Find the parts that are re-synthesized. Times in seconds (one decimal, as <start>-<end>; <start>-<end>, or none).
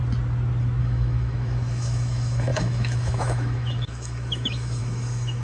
0.8-5.4